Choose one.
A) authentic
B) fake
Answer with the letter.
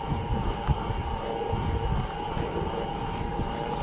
A